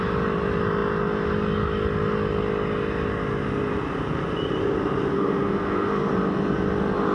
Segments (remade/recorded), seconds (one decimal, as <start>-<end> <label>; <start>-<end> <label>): 0.0-5.1 recorded; 5.1-6.1 remade; 6.1-7.1 recorded